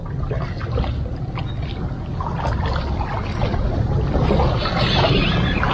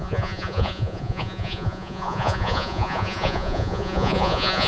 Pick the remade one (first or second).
second